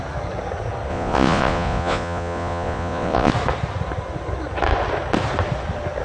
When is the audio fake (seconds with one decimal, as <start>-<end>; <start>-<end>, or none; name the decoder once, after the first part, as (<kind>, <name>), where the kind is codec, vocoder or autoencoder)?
0.9-3.3 (vocoder, Vocos)